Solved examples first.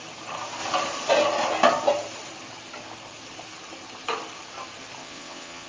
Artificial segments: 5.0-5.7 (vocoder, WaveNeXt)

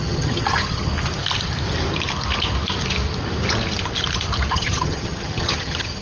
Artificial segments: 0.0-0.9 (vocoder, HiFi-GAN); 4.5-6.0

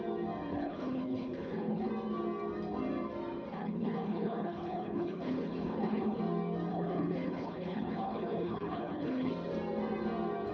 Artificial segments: 0.5-1.9 (codec, HILCodec); 3.5-6.2; 6.7-9.3

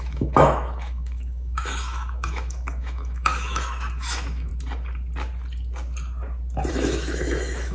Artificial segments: 0.0-4.5 (autoencoder, DAC-VAE); 6.7-7.7

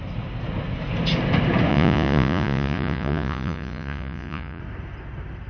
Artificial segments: 1.7-4.6 (vocoder, Vocos)

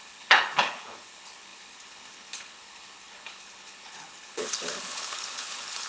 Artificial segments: 0.0-5.9 (codec, HILCodec)